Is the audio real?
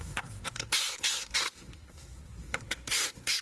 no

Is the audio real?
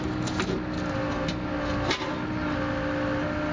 yes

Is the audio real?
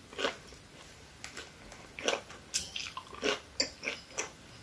yes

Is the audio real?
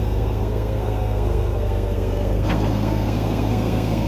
no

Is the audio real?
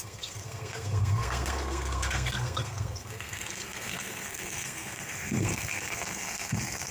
no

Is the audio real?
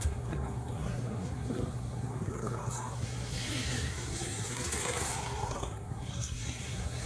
no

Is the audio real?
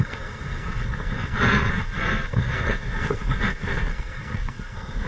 no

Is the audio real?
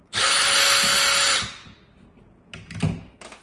yes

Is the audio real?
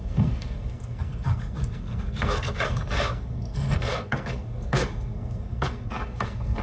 no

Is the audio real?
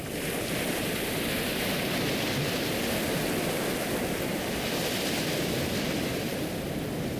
yes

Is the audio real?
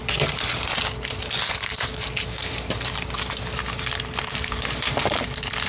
yes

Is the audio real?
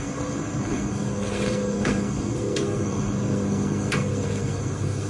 no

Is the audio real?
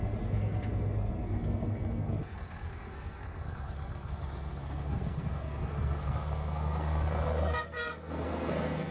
no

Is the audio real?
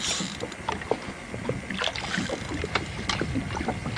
yes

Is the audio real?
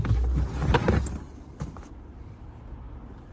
yes